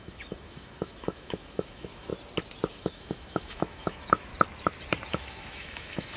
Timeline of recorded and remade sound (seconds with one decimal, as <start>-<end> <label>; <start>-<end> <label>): 0.0-2.1 remade; 2.1-2.7 recorded; 2.7-4.3 remade; 4.3-5.1 recorded; 5.1-6.2 remade

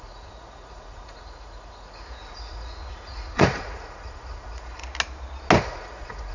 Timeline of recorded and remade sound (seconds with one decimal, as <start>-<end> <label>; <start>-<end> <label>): 0.0-4.8 remade; 4.8-5.6 recorded; 5.6-6.3 remade

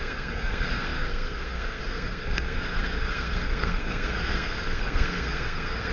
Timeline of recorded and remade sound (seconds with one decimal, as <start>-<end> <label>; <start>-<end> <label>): 0.0-5.9 remade

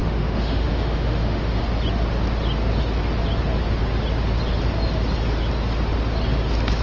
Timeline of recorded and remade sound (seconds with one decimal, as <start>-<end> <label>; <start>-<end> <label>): 0.0-1.6 remade; 1.6-6.8 recorded

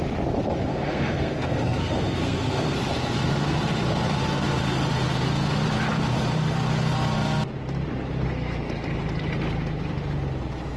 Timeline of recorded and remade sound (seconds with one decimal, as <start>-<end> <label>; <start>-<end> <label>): 0.0-0.7 recorded; 0.7-2.8 remade; 2.8-10.8 recorded